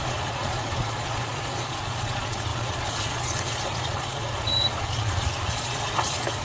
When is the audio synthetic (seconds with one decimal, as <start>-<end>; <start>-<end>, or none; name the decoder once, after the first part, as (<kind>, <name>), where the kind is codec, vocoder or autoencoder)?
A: 0.0-6.4 (vocoder, Vocos)